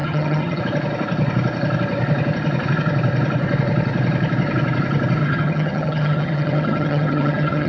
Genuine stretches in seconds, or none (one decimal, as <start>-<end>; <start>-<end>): 0.6-5.2